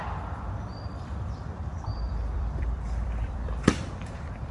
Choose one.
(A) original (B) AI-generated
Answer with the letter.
B